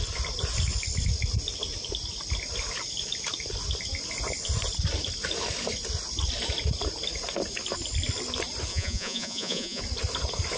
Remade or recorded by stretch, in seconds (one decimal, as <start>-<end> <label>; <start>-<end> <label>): 0.0-8.7 recorded; 8.7-9.8 remade; 9.8-10.6 recorded